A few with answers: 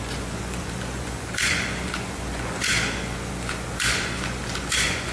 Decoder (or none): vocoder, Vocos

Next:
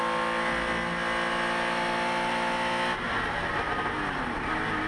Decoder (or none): none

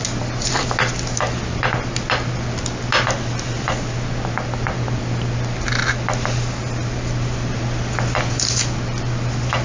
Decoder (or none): none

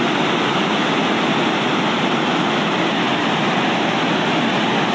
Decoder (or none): none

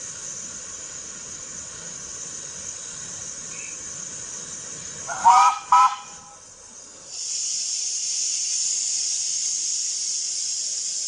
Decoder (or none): none